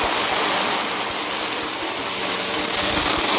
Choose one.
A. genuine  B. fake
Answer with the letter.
A